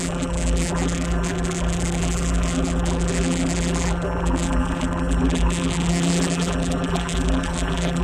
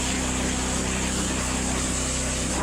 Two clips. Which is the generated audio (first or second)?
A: first